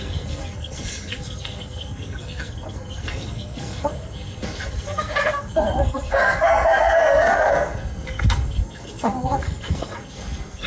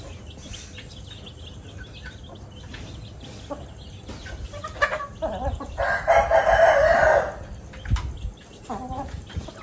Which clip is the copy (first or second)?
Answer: first